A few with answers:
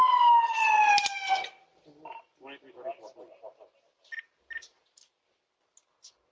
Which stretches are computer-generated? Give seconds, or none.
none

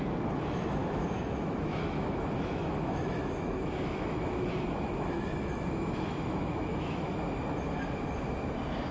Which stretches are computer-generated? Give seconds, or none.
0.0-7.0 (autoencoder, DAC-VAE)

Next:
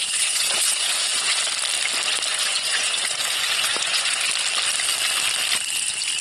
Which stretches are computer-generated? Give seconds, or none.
0.0-1.4 (vocoder, Vocos); 2.3-4.3

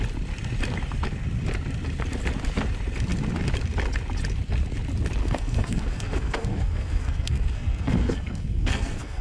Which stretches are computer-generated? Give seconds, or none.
5.2-9.2 (codec, SNAC)

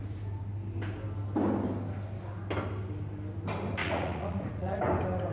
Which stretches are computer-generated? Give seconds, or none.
3.8-4.8 (vocoder, Vocos)